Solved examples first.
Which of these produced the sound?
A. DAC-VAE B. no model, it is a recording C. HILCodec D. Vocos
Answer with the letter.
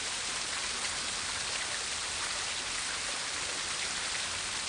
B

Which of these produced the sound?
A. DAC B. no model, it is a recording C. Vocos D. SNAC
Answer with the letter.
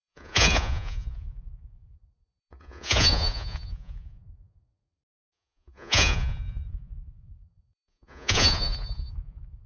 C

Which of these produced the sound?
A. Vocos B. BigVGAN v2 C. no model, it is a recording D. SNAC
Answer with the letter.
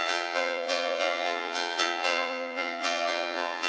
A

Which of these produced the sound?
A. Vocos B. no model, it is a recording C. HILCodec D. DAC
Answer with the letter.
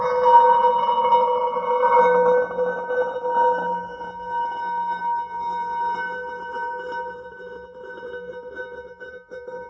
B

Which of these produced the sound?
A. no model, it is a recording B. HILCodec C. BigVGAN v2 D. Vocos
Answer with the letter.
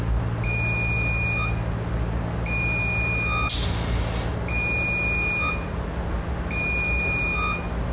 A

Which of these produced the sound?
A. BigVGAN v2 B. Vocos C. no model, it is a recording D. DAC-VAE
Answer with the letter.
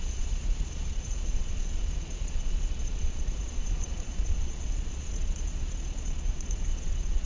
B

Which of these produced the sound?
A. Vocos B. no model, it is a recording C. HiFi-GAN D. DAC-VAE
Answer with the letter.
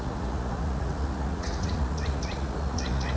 A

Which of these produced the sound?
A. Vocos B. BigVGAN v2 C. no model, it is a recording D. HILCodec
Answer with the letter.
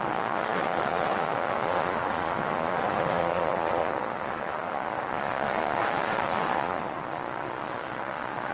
A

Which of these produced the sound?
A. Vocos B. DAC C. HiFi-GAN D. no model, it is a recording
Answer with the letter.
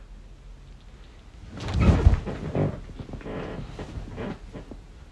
D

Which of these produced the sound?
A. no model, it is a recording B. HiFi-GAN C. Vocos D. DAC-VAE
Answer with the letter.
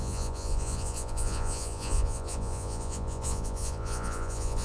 C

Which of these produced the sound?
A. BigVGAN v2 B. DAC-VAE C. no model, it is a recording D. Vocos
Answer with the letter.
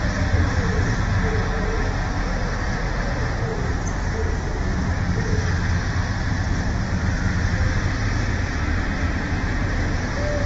C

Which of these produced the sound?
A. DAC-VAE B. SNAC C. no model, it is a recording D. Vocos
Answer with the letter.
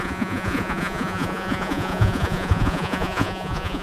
D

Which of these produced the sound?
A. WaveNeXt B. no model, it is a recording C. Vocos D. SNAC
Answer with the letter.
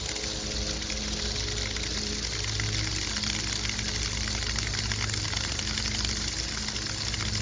B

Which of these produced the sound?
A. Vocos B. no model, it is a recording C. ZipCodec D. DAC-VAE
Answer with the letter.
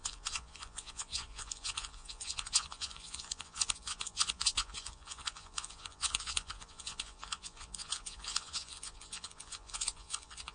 A